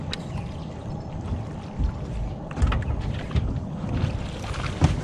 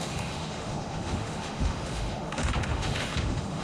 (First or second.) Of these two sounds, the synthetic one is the second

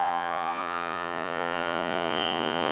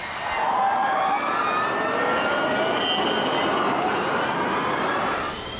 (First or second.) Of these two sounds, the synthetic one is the first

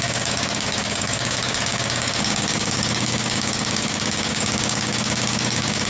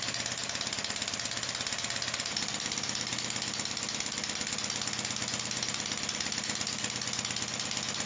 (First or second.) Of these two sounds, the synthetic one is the first